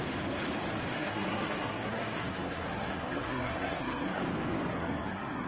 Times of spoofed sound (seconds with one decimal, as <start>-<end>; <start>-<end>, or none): 0.9-4.2; 4.7-5.5